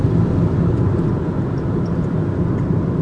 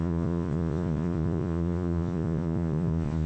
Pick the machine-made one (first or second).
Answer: second